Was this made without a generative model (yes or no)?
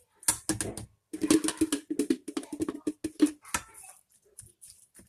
yes